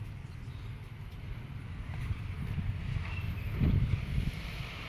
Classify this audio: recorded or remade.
remade